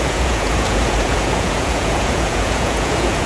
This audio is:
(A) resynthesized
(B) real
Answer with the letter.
A